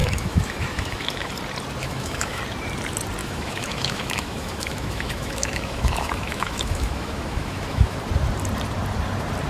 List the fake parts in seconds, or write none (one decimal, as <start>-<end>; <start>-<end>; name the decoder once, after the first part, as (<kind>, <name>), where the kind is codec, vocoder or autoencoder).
0.0-1.3 (autoencoder, DAC-VAE); 1.8-2.4; 3.2-8.0